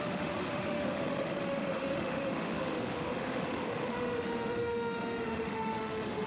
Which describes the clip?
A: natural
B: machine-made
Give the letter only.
B